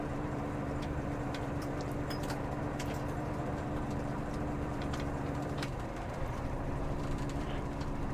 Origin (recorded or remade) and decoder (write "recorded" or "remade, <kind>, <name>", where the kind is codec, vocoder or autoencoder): remade, vocoder, BigVGAN v2